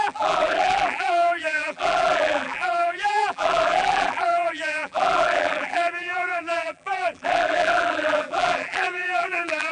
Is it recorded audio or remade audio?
remade